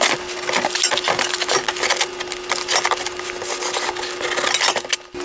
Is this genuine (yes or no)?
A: yes